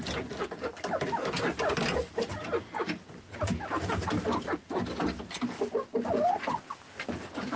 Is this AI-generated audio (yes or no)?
no